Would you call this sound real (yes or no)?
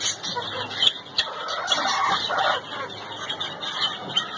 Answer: yes